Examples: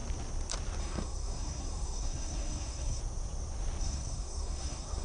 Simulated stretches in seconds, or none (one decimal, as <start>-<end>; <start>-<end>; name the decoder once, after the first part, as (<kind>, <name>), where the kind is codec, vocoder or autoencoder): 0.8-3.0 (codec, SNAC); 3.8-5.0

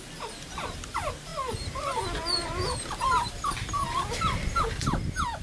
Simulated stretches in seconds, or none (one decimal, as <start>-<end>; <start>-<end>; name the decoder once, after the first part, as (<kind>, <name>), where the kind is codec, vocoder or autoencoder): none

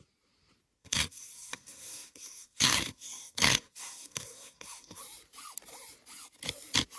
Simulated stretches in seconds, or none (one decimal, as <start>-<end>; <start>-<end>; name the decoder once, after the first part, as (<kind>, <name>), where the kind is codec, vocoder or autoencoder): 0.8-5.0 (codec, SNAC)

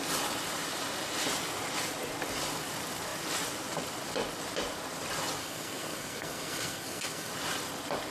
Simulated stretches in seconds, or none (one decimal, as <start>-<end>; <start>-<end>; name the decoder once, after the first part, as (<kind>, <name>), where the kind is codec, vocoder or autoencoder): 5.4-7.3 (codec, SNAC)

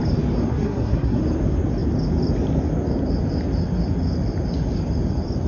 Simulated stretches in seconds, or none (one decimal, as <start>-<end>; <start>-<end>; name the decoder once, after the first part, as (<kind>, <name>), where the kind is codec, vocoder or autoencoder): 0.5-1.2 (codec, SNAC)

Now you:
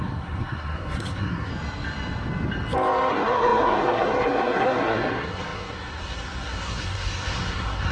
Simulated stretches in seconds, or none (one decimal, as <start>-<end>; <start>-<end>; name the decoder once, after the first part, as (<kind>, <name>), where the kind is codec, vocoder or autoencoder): 0.0-1.5 (codec, SNAC); 3.1-7.9